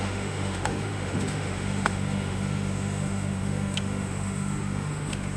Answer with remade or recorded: remade